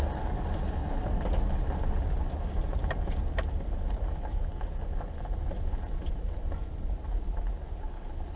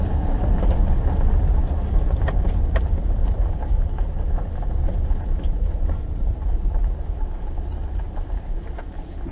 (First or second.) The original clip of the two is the first